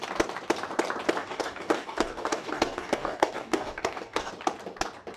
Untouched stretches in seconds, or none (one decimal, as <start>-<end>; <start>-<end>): 0.0-1.2; 4.3-5.2